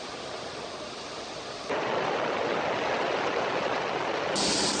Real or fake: real